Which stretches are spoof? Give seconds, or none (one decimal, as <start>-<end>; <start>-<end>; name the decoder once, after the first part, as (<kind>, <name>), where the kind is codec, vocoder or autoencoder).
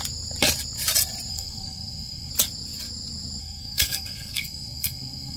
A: 1.3-2.3 (codec, SNAC); 3.4-5.4